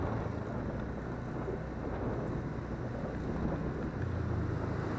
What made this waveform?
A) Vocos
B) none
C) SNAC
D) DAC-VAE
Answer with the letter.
B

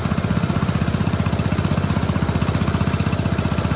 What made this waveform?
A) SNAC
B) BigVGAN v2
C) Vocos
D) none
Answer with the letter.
D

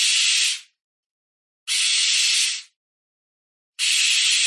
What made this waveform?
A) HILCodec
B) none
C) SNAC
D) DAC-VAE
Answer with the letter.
B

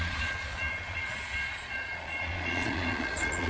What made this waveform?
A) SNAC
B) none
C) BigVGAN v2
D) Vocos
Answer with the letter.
D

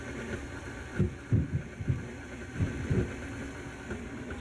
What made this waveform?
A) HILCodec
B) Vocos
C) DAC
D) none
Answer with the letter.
D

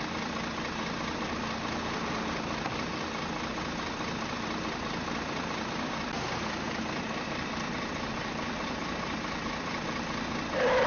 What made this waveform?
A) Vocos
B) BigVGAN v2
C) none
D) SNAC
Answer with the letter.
C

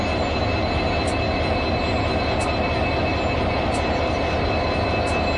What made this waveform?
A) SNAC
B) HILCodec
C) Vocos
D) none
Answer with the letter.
D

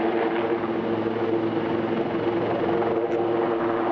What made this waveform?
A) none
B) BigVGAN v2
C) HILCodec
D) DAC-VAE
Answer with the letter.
A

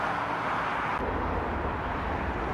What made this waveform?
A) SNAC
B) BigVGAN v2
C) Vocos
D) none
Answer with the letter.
D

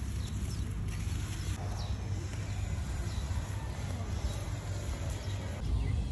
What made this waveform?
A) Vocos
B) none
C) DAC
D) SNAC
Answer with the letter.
B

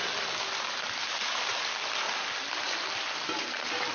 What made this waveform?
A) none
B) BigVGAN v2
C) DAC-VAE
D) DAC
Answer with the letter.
A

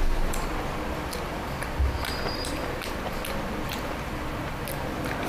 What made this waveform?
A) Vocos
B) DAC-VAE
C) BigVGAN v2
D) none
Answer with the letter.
C